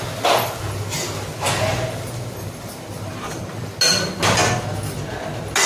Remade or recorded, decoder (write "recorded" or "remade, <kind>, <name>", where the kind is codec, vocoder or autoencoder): recorded